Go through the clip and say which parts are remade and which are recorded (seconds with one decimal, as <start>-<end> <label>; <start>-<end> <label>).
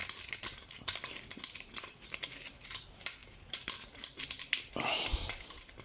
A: 0.0-1.4 remade; 1.4-3.2 recorded; 3.2-3.7 remade; 3.7-5.8 recorded